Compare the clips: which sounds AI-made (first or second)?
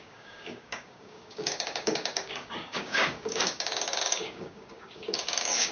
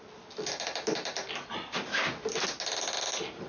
first